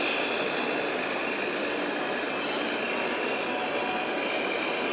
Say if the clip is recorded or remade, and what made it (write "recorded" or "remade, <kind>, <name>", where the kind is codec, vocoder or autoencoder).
recorded